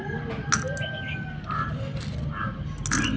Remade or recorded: recorded